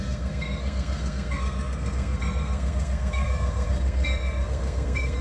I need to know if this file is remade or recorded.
remade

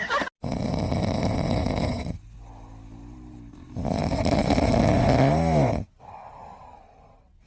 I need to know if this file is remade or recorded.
recorded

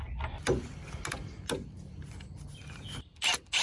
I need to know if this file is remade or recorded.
recorded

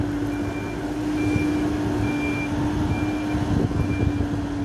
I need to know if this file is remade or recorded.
recorded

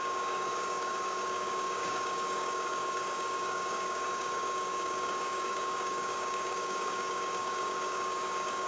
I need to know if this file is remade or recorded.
remade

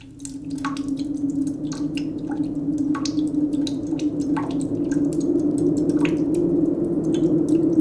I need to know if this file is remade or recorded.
recorded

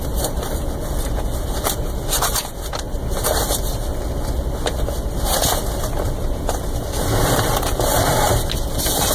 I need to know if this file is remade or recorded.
recorded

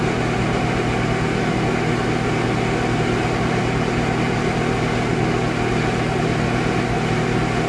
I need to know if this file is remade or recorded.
recorded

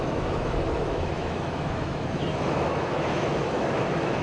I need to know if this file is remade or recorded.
remade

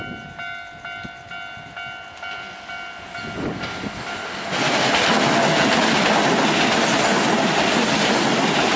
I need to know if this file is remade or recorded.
recorded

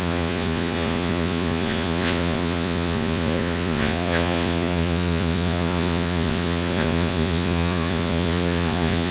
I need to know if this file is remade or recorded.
remade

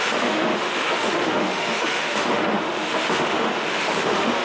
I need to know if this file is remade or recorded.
remade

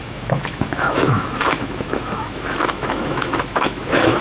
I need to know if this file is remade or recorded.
remade